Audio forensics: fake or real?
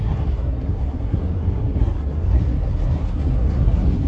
fake